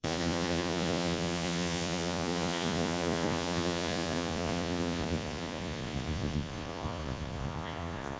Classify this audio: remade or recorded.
remade